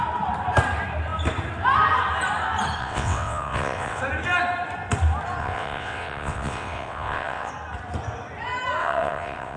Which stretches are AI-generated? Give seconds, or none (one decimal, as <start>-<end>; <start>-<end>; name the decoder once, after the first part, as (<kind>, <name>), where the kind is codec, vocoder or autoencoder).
2.8-4.0 (vocoder, WaveNeXt); 5.4-7.5; 8.8-9.6

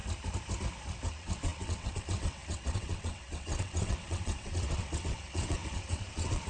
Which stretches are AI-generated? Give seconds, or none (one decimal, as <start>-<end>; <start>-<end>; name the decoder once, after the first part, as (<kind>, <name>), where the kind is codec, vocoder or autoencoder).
1.1-6.5 (vocoder, WaveNeXt)